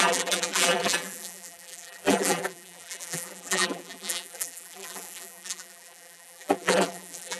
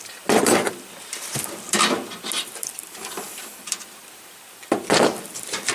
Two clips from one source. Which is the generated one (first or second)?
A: first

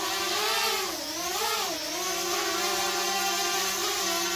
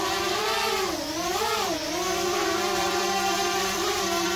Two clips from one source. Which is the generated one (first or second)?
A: second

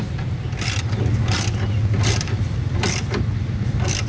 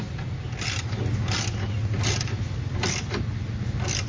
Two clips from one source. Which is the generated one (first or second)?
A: first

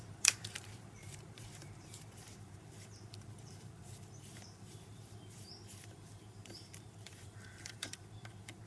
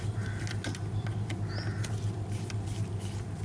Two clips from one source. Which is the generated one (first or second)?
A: first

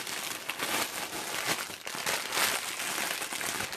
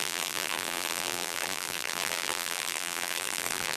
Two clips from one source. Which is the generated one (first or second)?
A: second